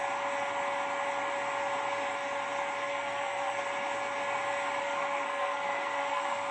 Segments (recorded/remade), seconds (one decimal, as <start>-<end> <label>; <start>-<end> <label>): 0.0-2.9 recorded; 2.9-3.6 remade; 3.6-4.8 recorded; 4.8-6.5 remade